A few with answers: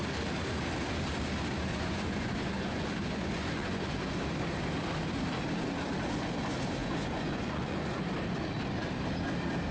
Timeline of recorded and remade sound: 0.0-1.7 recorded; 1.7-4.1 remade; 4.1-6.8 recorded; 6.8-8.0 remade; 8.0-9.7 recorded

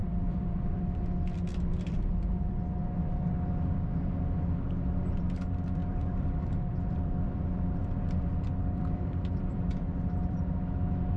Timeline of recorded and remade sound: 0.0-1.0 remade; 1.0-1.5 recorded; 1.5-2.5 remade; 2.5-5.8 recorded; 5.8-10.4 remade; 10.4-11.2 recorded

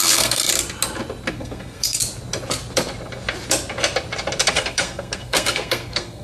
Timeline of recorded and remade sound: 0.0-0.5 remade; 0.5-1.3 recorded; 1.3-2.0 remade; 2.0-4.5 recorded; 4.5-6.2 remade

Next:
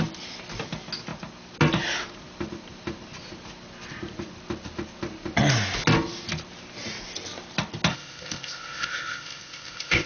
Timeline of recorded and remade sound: 0.0-7.9 recorded; 7.9-10.1 remade